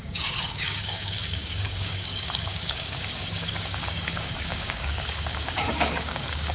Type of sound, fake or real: fake